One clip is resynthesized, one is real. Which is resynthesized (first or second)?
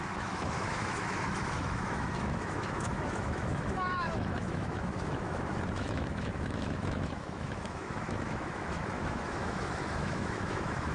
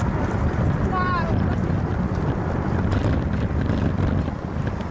first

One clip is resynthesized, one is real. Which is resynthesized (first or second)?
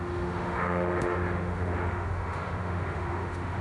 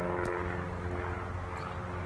first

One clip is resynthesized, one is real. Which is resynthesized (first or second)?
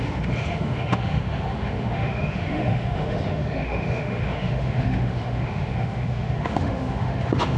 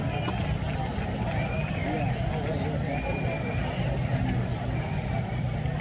first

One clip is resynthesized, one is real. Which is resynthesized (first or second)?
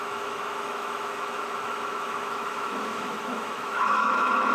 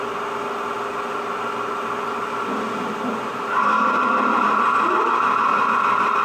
first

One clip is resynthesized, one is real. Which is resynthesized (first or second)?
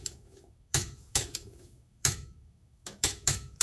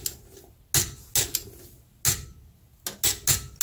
first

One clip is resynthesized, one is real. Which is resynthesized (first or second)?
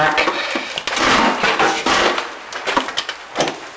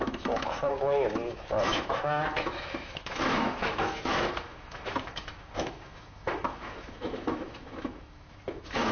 second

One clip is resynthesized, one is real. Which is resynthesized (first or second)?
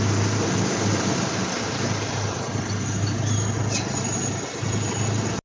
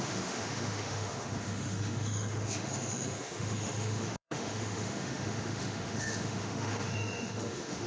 second